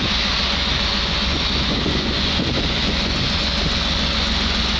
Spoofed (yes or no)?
yes